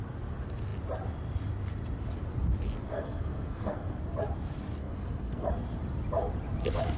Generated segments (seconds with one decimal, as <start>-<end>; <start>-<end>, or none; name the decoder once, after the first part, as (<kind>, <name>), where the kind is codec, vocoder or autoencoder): 2.9-4.0 (codec, SNAC); 4.8-5.5